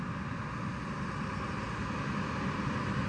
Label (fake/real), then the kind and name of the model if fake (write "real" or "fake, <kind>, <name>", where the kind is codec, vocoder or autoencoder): real